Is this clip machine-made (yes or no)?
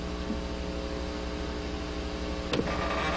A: no